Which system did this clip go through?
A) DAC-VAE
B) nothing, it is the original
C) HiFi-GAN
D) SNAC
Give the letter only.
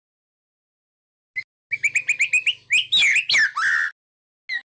B